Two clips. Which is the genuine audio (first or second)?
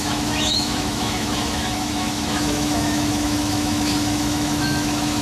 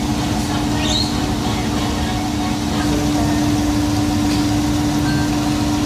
second